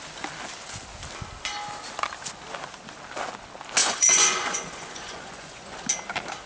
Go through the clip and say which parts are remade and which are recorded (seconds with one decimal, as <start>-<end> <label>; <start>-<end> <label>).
0.0-3.8 recorded; 3.8-5.8 remade; 5.8-6.5 recorded